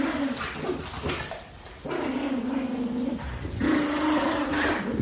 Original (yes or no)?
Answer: yes